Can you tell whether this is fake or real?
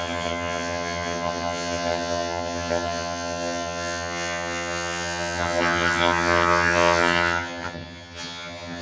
fake